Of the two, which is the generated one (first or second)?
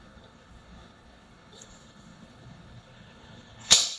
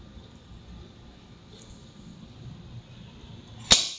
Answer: first